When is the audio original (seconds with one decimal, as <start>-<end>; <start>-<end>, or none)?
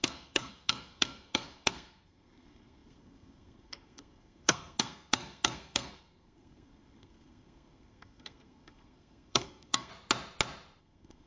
9.9-10.8